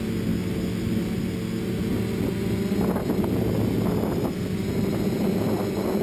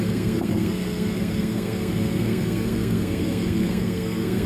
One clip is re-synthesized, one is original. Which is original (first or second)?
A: first